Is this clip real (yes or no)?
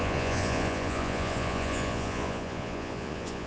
no